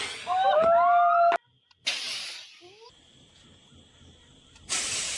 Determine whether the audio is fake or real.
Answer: real